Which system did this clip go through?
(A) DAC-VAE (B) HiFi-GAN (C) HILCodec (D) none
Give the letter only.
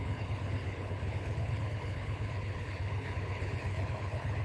C